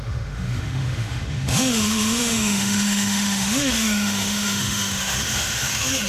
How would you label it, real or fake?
fake